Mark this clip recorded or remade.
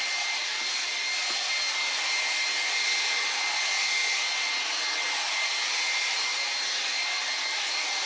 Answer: recorded